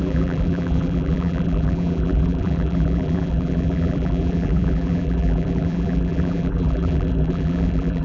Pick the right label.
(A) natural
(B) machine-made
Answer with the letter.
B